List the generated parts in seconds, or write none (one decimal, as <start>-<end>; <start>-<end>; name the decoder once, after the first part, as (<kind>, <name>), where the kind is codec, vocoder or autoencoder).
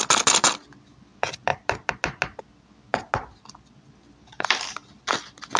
none